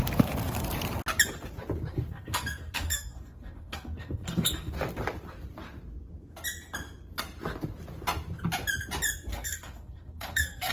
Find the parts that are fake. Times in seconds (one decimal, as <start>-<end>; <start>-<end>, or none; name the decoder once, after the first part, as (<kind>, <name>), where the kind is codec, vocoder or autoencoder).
1.9-4.7 (codec, SNAC); 9.3-10.7